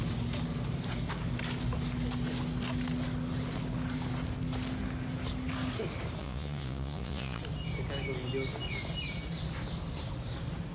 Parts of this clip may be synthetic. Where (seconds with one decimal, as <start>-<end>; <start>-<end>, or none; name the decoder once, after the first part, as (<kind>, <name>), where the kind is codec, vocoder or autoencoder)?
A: 6.2-7.4 (vocoder, Vocos)